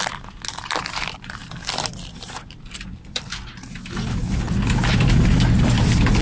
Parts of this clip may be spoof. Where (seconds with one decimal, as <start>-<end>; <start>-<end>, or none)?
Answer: none